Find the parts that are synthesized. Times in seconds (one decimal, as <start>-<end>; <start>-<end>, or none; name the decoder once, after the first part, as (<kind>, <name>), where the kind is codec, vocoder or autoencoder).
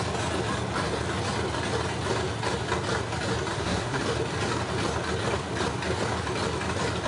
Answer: 3.5-4.0 (codec, SNAC)